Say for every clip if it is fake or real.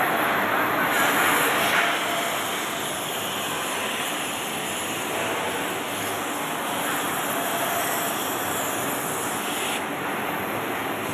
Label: real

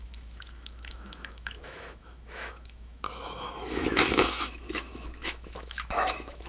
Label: fake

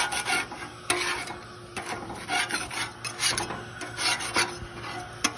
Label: real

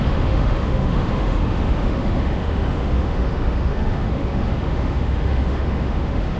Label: fake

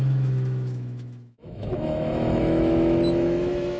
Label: fake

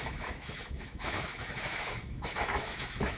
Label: fake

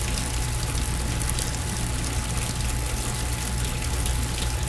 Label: real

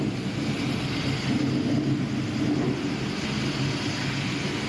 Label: real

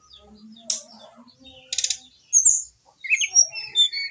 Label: real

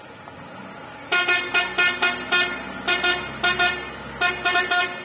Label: real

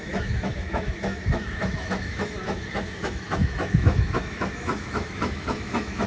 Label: fake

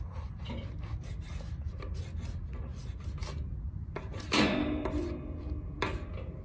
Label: real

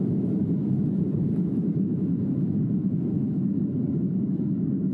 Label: fake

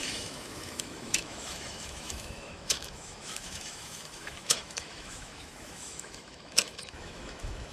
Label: fake